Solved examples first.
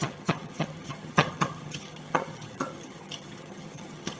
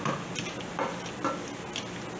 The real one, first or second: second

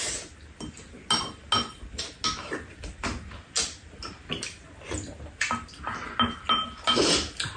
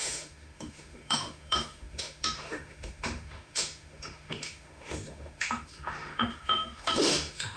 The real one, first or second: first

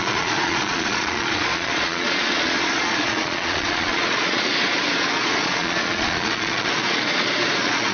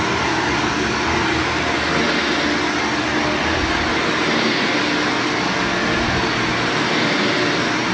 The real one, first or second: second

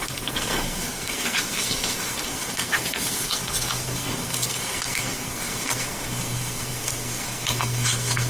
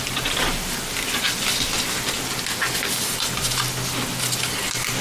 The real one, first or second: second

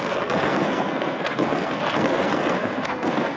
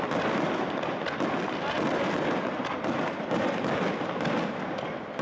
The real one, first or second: second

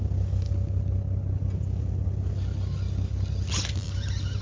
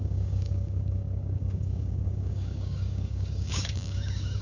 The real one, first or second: first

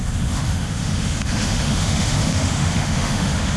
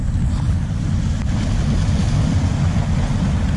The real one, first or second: second